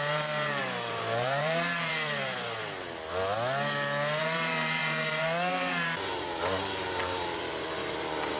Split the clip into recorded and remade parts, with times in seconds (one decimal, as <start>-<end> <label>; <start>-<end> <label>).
0.0-1.9 remade; 1.9-4.2 recorded; 4.2-8.4 remade